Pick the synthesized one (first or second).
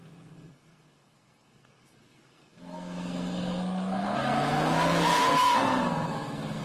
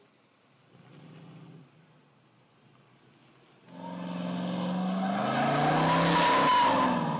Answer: first